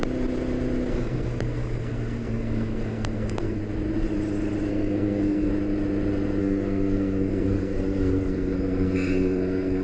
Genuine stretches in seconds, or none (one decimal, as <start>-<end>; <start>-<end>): 0.0-0.9; 3.6-4.7; 5.5-6.4

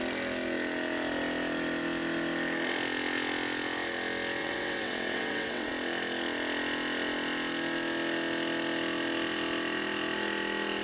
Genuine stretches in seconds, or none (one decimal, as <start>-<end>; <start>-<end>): 0.0-4.4; 5.7-10.8

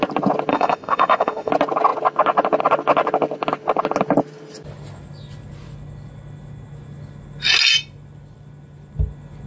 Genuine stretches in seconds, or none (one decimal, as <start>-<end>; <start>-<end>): 0.0-0.5; 1.5-9.5

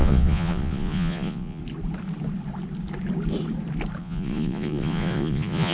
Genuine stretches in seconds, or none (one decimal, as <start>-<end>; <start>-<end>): 1.6-4.0

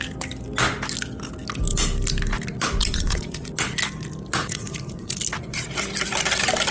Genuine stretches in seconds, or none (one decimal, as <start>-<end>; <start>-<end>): 0.0-2.8; 3.5-4.4; 5.2-6.7